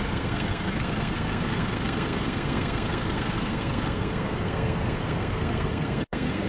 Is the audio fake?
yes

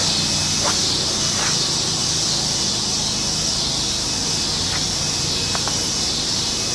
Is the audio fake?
no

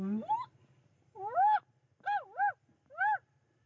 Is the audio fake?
no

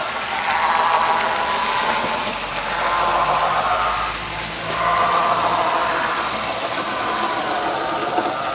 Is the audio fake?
no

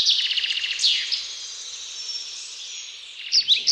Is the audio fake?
no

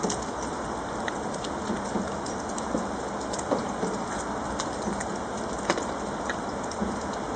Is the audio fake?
no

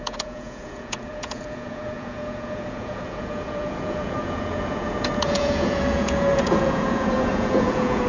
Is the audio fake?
yes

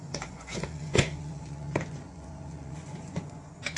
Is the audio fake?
yes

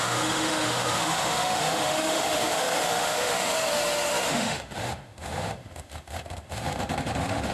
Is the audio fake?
yes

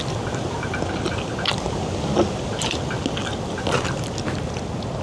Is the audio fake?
no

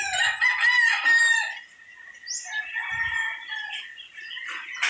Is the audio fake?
no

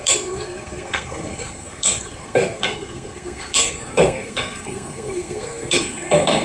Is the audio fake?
yes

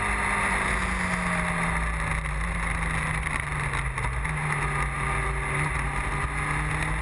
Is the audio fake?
no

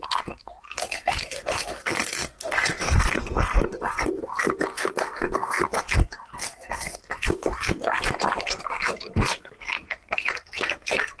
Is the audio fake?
yes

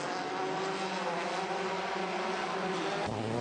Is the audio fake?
no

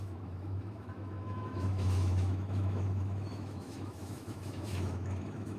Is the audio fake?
yes